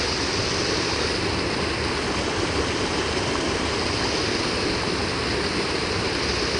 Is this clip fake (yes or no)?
no